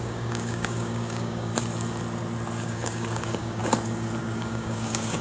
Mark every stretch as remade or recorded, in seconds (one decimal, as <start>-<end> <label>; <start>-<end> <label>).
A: 0.0-1.5 remade; 1.5-2.6 recorded; 2.6-3.6 remade; 3.6-4.2 recorded; 4.2-5.2 remade